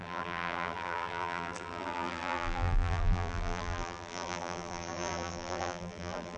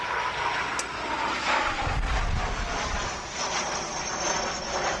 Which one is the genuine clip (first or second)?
second